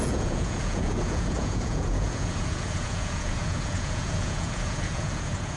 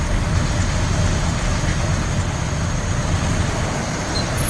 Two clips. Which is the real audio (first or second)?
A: second